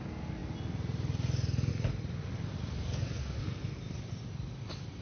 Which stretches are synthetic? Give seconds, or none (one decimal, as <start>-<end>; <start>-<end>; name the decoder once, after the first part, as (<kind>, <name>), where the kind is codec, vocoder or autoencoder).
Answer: 3.2-3.8 (codec, SNAC)